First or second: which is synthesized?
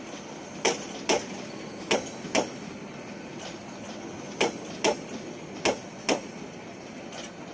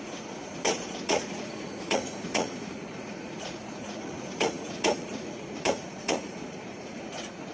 second